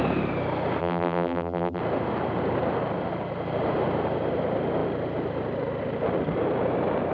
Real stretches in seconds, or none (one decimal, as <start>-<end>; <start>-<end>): 0.0-0.8; 1.8-7.1

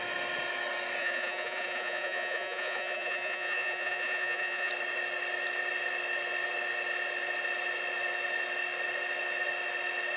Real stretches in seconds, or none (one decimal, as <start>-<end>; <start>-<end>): 0.0-1.0; 4.7-10.2

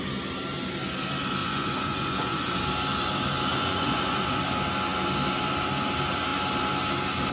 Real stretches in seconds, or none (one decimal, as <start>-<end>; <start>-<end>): 0.0-1.4; 2.6-3.5; 4.4-7.3

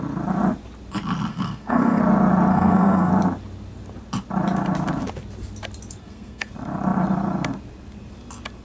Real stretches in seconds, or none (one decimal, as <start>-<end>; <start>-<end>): 0.0-1.3; 2.0-2.5; 3.1-6.0; 6.5-8.6

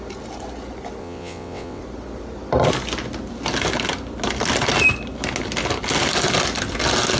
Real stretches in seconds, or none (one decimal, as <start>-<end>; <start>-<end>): 0.0-1.0; 1.8-7.2

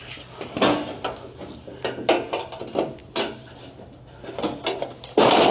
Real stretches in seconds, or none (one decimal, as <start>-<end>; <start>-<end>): 0.0-5.5

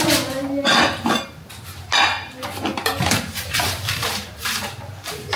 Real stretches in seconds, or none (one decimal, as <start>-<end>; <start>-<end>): 0.0-2.7; 4.9-5.4